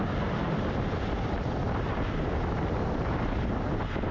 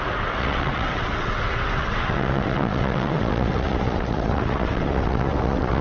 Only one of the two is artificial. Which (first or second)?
second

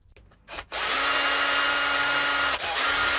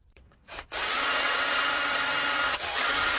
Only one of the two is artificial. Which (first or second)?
second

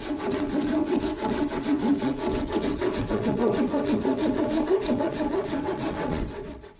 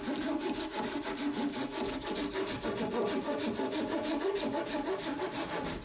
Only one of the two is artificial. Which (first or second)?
first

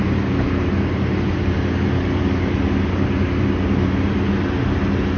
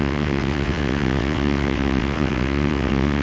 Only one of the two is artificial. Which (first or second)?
second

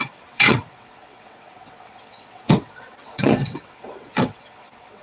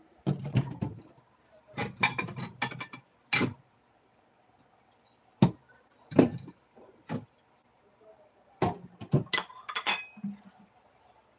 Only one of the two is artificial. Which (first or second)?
first